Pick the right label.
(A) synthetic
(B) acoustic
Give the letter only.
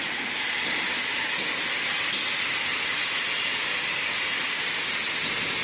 B